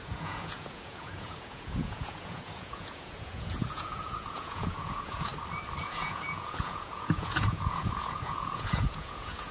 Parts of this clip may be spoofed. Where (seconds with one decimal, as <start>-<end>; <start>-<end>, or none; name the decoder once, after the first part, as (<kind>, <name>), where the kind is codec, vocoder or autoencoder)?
0.0-5.3 (vocoder, Vocos); 5.8-9.5